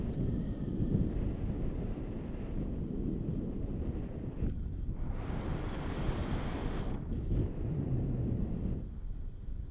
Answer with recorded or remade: recorded